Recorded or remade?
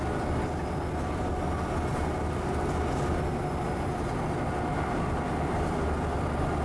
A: recorded